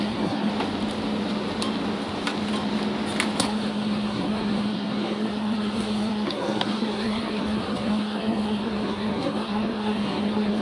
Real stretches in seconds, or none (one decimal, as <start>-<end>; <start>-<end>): 0.5-3.4